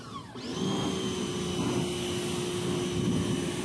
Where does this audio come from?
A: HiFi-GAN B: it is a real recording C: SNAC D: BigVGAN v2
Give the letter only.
B